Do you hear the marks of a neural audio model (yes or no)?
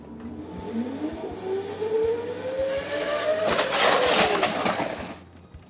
no